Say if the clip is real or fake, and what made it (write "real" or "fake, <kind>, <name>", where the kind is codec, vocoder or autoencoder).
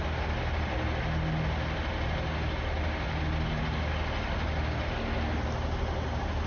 real